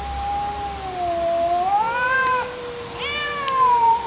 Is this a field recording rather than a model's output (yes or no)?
yes